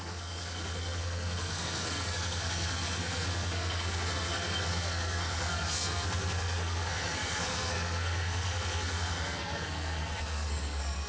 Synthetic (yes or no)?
yes